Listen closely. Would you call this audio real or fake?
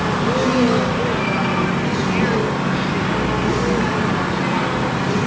real